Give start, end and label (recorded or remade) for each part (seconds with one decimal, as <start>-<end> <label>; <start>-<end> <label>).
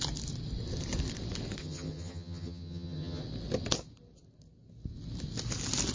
0.0-1.6 recorded; 1.6-3.2 remade; 3.2-5.9 recorded